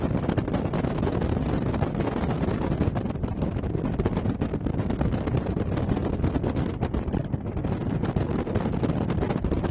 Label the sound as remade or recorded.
recorded